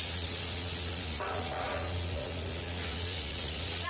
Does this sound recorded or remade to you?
remade